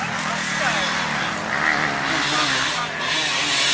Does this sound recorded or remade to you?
recorded